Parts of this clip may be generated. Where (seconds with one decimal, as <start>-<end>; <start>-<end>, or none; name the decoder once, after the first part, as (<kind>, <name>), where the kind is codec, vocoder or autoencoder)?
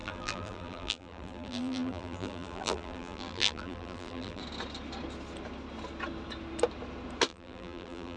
0.0-4.4 (vocoder, BigVGAN v2); 7.3-8.2